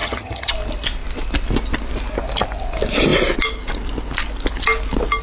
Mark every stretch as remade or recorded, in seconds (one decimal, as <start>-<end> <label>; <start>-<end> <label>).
0.0-0.5 remade; 0.5-5.2 recorded